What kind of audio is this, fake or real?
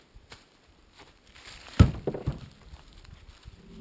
real